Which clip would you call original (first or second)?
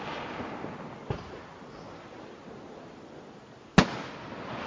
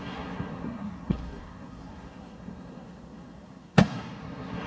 first